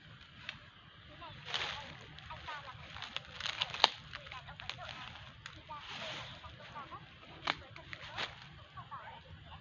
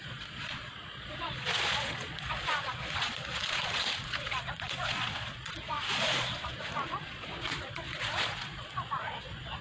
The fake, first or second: second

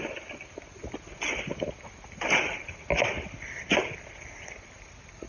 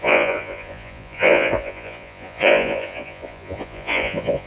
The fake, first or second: second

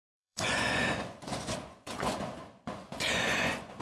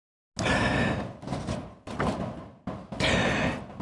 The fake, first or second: first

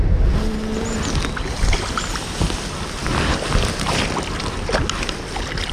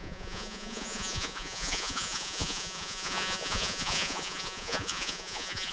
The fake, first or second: second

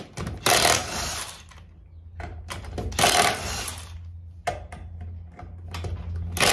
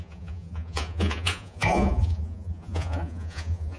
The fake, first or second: second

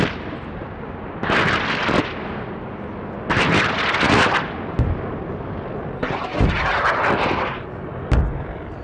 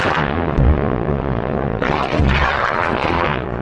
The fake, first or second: second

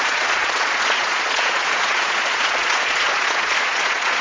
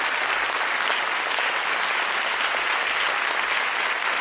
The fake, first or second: first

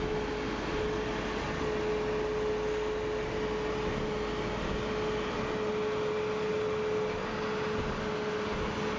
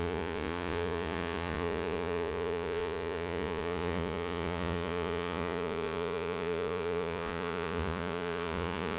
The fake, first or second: second